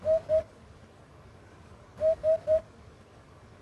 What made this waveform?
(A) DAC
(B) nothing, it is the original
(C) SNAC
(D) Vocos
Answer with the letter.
A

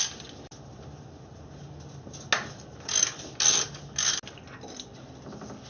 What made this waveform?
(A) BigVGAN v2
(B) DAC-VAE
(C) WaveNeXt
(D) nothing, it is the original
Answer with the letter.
D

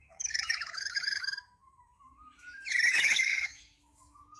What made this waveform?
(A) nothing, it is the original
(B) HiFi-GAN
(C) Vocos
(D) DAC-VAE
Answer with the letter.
D